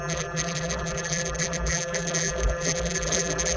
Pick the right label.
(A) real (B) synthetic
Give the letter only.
B